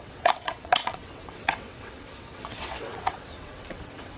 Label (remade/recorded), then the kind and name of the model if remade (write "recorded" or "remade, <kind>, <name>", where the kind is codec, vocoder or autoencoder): remade, vocoder, WaveNeXt